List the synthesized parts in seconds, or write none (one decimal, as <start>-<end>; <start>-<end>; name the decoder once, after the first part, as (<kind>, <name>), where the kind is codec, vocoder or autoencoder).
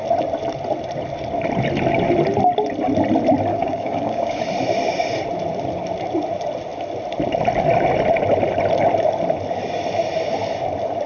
3.5-4.4 (codec, DAC)